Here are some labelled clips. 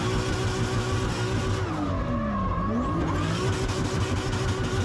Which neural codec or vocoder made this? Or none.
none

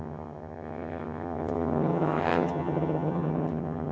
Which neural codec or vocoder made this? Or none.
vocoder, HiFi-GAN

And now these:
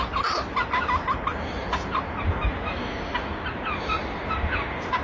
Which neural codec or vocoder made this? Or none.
none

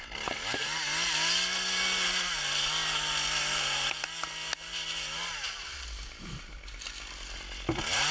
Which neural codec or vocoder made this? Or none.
none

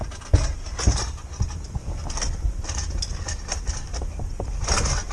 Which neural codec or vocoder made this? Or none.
none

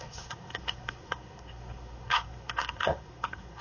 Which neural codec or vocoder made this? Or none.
codec, SNAC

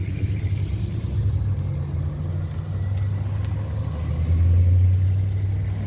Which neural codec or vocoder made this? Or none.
none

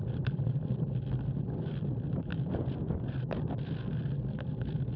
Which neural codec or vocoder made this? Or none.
none